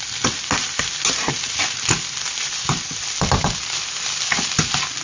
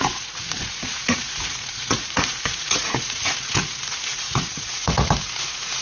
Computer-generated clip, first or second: second